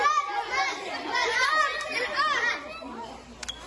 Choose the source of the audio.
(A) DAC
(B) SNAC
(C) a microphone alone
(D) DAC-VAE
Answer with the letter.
C